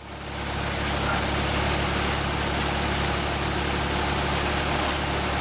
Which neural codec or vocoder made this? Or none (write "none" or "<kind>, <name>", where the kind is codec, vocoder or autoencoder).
none